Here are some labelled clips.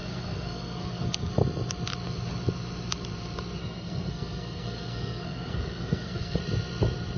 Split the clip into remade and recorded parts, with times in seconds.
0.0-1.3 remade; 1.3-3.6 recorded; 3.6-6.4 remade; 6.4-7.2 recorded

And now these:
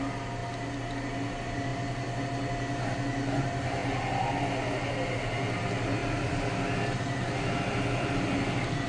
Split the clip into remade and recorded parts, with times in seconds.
0.0-8.9 recorded

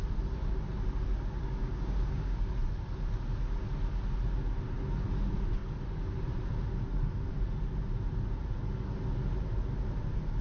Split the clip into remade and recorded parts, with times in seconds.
0.0-1.4 recorded; 1.4-2.5 remade; 2.5-10.4 recorded

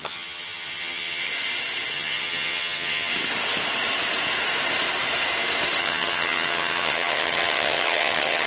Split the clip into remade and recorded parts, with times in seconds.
0.0-1.3 remade; 1.3-1.9 recorded; 1.9-3.1 remade; 3.1-5.8 recorded; 5.8-8.5 remade

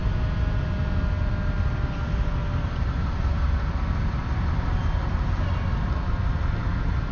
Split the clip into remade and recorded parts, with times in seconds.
0.0-7.1 recorded

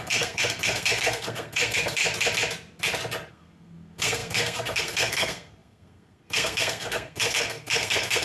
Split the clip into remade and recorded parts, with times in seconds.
0.0-2.0 remade; 2.0-3.3 recorded; 3.3-8.2 remade

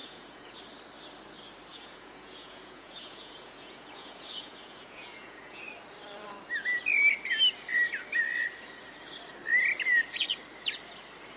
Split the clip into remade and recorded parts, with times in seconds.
0.0-0.6 remade; 0.6-1.7 recorded; 1.7-5.6 remade; 5.6-11.4 recorded

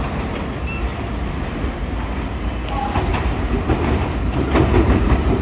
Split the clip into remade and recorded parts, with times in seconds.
0.0-0.9 recorded; 0.9-2.4 remade; 2.4-3.1 recorded; 3.1-4.0 remade; 4.0-5.4 recorded